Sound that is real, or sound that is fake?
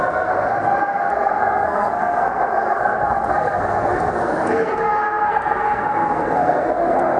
fake